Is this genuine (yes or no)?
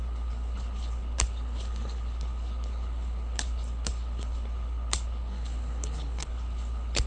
no